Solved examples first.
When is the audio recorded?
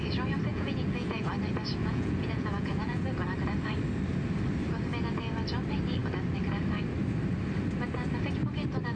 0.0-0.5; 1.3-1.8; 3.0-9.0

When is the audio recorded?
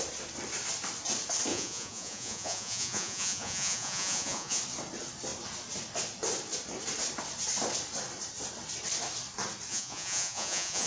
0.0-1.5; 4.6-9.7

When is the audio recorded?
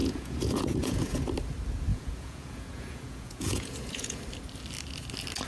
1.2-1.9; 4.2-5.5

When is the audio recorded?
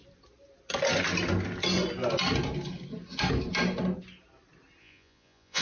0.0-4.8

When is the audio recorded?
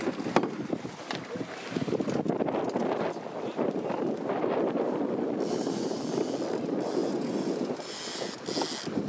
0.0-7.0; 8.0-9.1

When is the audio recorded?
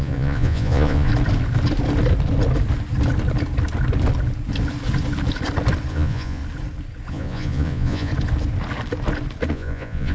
1.1-5.9; 6.4-7.1; 8.1-9.5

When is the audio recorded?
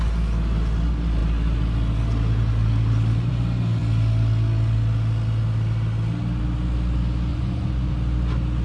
0.0-7.3; 7.9-8.6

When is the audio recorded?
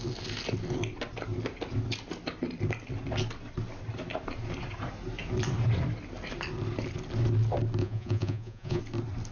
0.0-7.8; 8.8-9.3